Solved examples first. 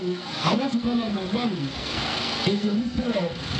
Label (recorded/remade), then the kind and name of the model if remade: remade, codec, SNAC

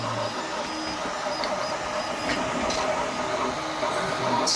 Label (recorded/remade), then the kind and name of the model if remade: recorded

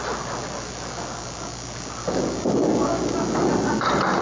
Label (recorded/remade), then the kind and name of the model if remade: recorded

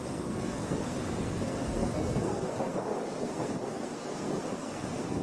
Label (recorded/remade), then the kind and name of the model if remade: remade, codec, SNAC